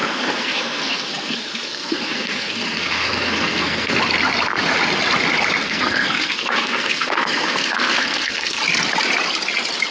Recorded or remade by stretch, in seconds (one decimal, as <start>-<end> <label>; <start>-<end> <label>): 0.0-4.0 remade; 4.0-5.6 recorded; 5.6-8.6 remade; 8.6-9.9 recorded